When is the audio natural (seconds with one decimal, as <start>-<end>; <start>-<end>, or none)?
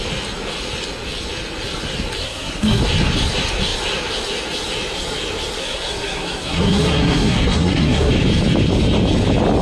0.0-2.2; 2.8-5.6; 8.1-9.6